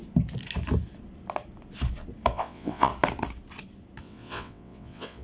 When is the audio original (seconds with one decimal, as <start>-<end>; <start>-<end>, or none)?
0.0-2.3; 2.9-4.0